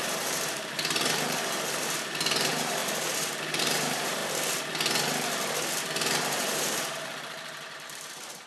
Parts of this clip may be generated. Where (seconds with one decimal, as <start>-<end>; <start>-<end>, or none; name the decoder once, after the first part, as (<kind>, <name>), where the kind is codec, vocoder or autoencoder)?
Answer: 0.0-4.2 (vocoder, BigVGAN v2); 5.8-8.5